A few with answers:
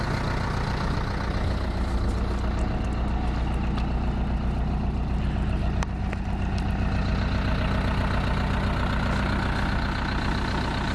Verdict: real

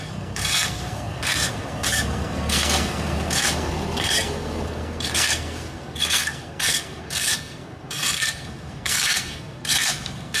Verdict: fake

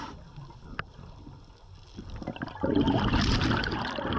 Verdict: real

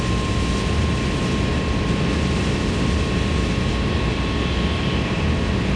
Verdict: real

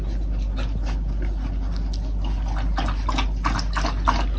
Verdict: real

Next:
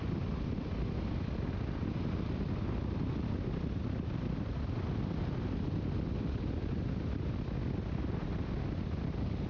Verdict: real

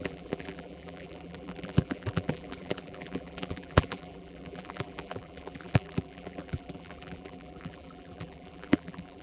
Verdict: fake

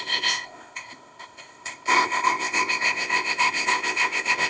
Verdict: fake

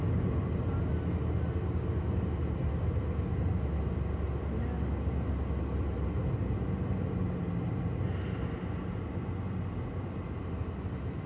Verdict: real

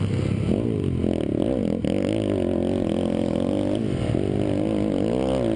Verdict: real